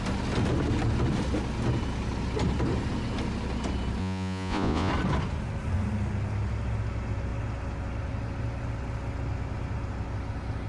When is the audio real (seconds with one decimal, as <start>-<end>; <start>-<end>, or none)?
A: 0.0-4.0; 4.9-10.7